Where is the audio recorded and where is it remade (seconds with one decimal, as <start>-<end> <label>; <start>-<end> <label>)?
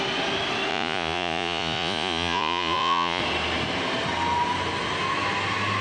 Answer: 0.0-0.7 recorded; 0.7-3.2 remade; 3.2-5.8 recorded